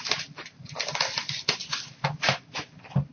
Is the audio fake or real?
real